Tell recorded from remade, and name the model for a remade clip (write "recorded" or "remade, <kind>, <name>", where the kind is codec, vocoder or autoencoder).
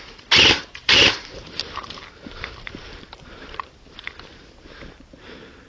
remade, vocoder, BigVGAN v2